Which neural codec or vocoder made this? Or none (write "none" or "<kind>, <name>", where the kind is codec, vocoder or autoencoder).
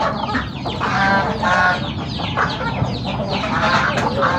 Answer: none